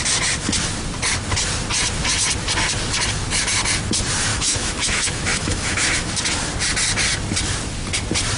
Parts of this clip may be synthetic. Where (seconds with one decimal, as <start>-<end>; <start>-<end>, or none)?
4.3-6.1